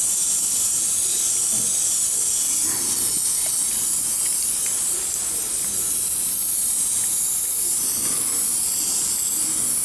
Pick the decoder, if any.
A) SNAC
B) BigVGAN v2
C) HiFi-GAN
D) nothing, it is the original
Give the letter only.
D